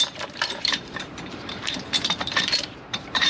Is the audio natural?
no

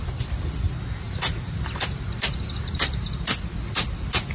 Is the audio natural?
yes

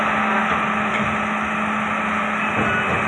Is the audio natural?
yes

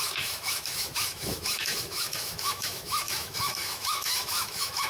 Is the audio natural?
no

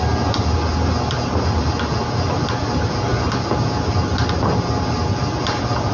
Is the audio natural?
yes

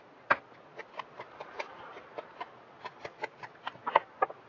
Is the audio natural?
yes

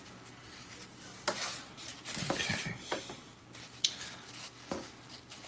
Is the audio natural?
yes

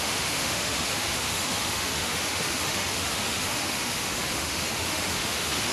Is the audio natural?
no